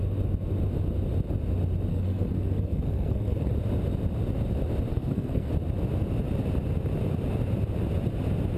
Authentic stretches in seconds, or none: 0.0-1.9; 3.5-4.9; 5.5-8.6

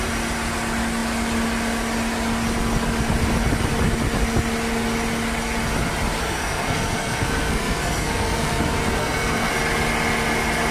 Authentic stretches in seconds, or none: 0.0-6.2; 8.6-9.0; 9.5-10.7

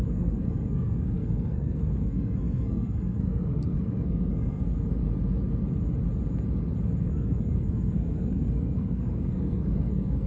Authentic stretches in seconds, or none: 5.0-7.0

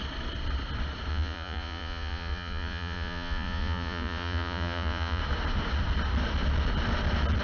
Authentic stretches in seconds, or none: 0.0-1.1; 5.2-7.4